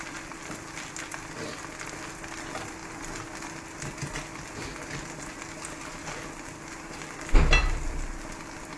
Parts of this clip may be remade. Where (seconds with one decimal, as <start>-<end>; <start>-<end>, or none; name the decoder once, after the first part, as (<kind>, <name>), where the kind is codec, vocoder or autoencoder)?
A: none